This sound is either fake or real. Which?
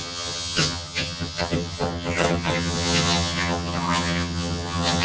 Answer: fake